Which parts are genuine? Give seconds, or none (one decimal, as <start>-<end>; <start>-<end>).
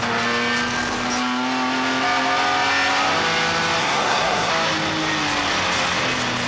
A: 0.0-3.8; 4.5-6.5